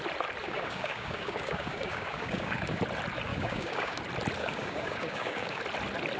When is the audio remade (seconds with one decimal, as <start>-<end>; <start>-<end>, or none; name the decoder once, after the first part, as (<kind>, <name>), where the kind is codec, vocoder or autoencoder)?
0.4-2.8 (codec, DAC); 3.3-4.0; 4.4-5.6